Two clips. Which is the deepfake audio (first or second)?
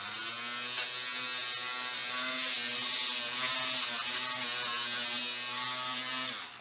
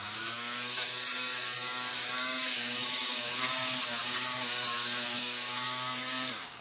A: second